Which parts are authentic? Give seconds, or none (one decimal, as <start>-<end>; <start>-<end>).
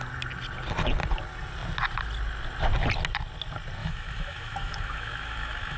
0.0-3.8